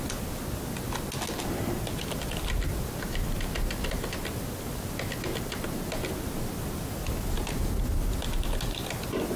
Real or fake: real